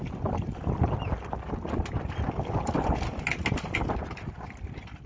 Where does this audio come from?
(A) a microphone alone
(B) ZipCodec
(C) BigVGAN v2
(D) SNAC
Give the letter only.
A